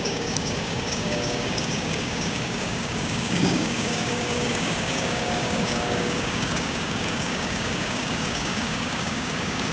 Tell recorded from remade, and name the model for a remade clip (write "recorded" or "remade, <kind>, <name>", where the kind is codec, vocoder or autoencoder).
remade, codec, DAC